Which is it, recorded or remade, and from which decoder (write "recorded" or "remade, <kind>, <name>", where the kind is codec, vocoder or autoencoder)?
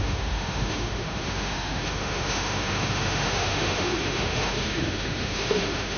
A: remade, autoencoder, DAC-VAE